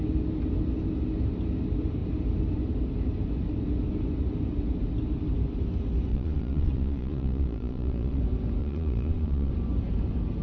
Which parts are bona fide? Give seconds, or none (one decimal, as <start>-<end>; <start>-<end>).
0.0-6.1; 8.2-8.6; 9.5-10.4